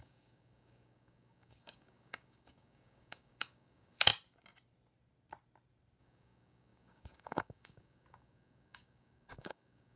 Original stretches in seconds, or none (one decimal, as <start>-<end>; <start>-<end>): 4.1-6.0